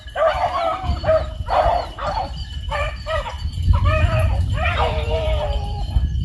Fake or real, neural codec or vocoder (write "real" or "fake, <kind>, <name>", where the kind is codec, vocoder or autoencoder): fake, vocoder, BigVGAN v2